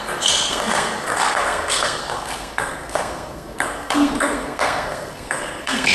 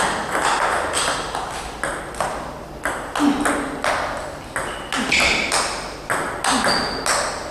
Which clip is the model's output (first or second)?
first